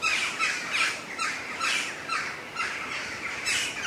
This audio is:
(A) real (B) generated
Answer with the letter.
A